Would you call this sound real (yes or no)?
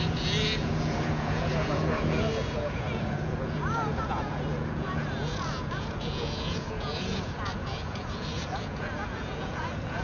no